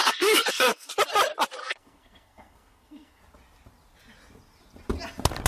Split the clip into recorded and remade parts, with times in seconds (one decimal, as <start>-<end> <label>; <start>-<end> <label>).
0.0-0.9 remade; 0.9-1.6 recorded; 1.6-3.2 remade; 3.2-5.5 recorded